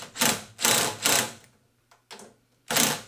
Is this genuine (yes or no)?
yes